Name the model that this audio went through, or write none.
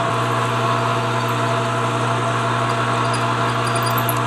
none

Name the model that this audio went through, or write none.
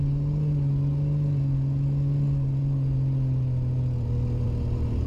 none